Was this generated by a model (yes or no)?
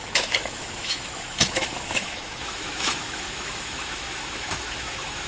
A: yes